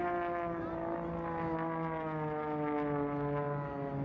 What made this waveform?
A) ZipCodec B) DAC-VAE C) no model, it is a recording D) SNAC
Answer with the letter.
C